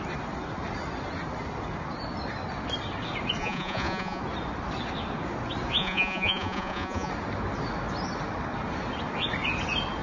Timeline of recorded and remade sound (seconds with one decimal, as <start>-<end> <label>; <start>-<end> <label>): 0.0-3.4 recorded; 3.4-4.2 remade; 4.2-5.8 recorded; 5.8-7.1 remade; 7.1-10.0 recorded